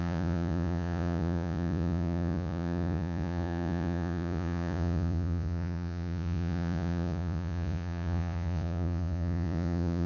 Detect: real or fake fake